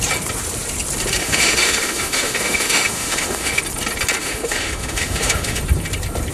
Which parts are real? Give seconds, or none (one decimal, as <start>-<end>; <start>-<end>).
0.0-1.2; 3.6-4.2; 5.6-6.3